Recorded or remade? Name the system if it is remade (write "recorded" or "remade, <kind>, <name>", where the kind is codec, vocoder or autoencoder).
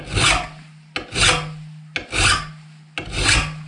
recorded